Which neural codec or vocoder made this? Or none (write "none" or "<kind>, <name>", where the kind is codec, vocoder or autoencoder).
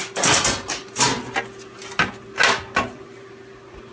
none